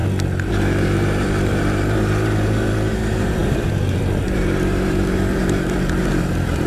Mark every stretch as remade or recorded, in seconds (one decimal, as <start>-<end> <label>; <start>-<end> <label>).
0.0-0.5 recorded; 0.5-6.7 remade